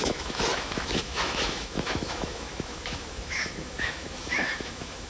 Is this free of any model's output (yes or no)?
no